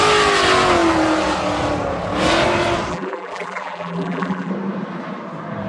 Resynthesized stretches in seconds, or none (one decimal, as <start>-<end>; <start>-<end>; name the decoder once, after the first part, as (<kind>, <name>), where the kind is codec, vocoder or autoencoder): 2.9-4.5 (vocoder, BigVGAN v2)